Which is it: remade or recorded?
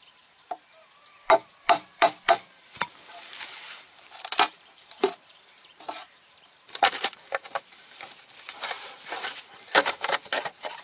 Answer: remade